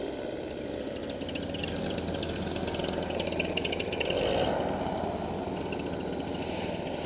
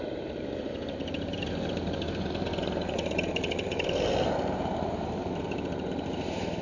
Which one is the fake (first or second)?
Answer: second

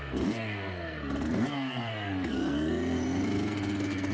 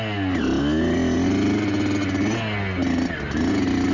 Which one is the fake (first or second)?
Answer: first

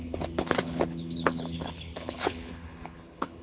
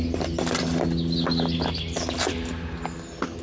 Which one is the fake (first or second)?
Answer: first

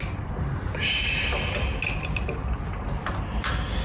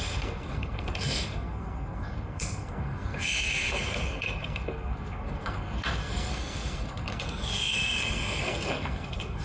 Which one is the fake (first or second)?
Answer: second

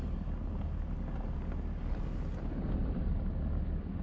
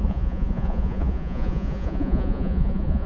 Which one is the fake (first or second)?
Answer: second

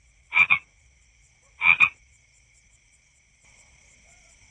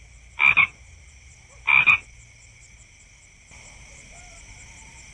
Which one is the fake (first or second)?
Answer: first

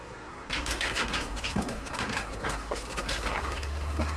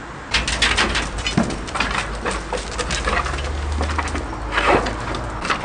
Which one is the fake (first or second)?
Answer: first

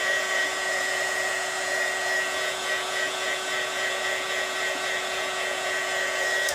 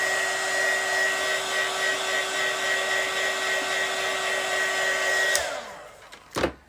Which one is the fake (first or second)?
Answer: first